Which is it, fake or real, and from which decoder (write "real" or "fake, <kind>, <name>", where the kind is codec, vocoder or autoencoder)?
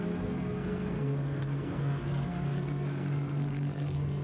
fake, codec, SNAC